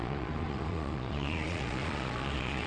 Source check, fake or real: fake